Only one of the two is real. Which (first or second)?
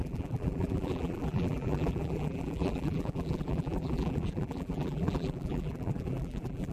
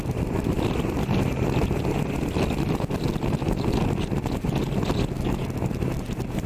second